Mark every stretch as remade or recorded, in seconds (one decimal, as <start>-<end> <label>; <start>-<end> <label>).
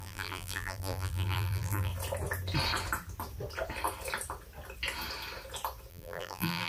0.0-1.9 remade; 1.9-5.9 recorded; 5.9-6.7 remade